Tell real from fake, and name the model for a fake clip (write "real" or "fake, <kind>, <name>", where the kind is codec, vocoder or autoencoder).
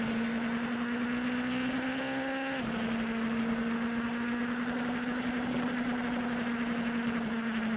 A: real